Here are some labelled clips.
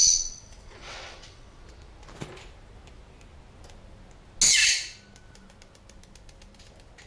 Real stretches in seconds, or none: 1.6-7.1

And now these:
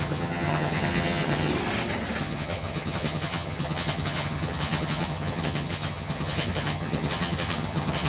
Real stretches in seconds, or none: 1.5-2.2

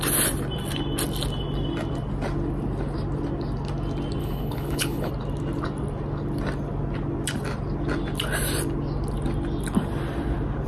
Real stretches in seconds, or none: 0.0-4.2; 5.1-10.7

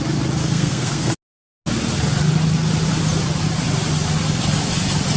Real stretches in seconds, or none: 0.0-0.4; 1.1-5.2

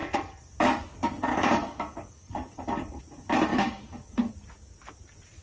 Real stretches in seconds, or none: 0.0-1.3; 3.0-3.5; 4.3-5.4

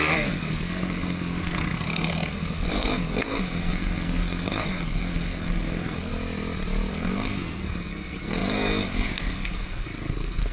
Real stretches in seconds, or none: 6.1-6.9

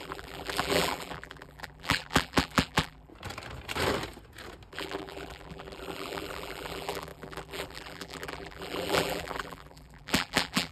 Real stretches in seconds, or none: 3.1-4.7